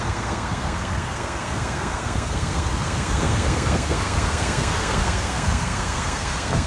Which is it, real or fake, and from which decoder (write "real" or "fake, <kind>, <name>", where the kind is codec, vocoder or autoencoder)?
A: fake, codec, SNAC